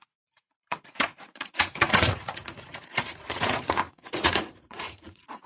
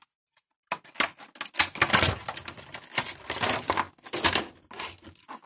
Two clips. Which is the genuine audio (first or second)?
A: second